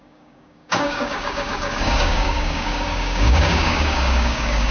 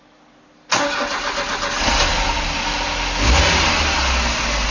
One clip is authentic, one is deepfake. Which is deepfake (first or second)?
first